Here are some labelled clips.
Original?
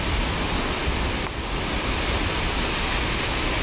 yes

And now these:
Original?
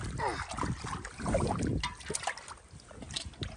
yes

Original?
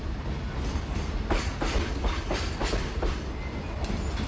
yes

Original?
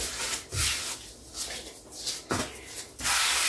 yes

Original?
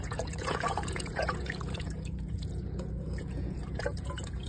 no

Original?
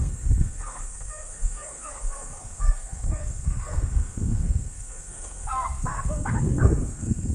no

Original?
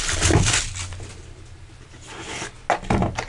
yes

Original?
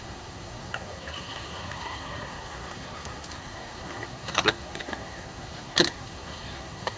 no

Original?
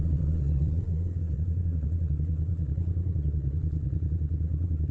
no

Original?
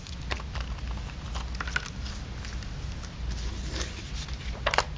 yes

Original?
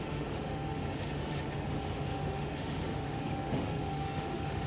no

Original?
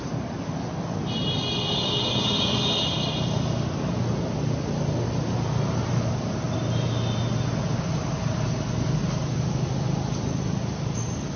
yes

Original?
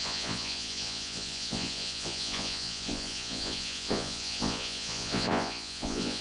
no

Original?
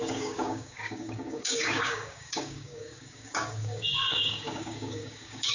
no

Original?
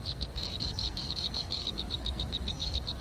no